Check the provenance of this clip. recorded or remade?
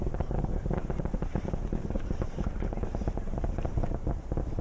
remade